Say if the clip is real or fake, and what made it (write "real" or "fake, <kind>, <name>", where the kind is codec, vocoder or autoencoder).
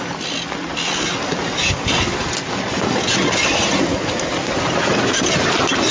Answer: real